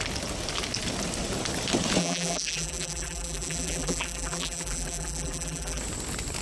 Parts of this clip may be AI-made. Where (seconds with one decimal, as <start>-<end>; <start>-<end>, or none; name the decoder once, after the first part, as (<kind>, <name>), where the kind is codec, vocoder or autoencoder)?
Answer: 2.0-5.8 (vocoder, BigVGAN v2)